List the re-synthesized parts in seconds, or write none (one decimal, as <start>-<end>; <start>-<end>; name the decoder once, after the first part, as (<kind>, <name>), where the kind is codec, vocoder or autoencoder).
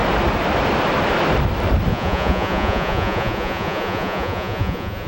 1.9-5.1 (vocoder, Vocos)